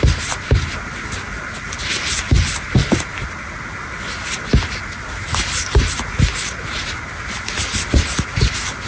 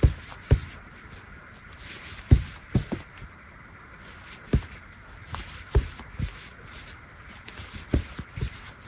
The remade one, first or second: second